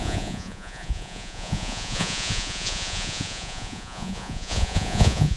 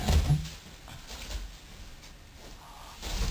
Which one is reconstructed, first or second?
first